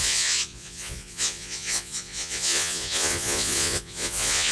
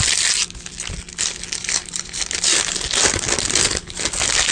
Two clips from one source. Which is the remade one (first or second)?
first